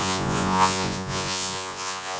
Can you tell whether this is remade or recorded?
remade